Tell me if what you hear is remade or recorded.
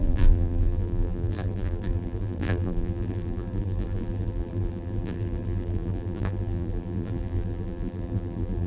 remade